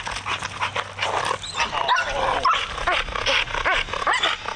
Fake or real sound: real